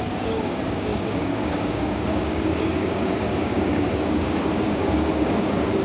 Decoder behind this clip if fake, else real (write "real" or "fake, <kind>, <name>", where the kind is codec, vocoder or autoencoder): fake, codec, DAC